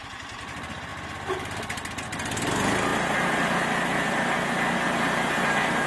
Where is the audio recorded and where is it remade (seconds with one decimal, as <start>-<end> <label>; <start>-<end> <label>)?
0.0-5.9 recorded